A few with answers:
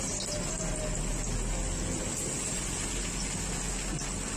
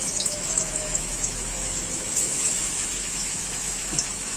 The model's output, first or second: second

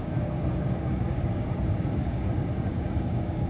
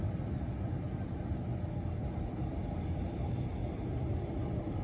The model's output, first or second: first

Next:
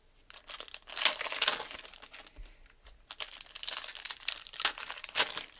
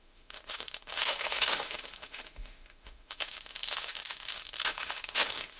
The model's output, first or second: second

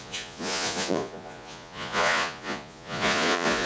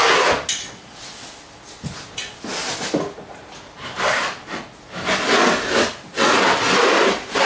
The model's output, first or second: first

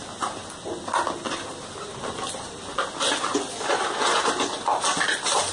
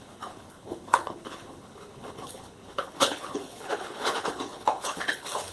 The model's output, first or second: second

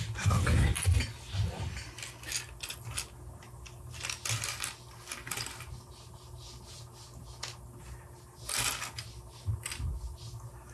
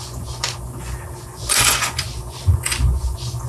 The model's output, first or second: second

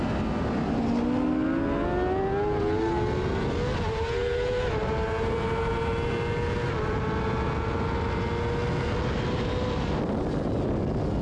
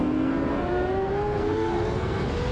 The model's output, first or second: second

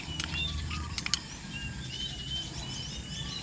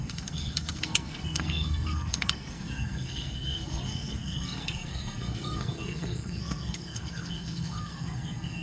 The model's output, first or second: second